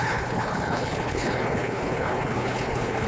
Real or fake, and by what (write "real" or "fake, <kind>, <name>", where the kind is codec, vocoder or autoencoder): fake, codec, HILCodec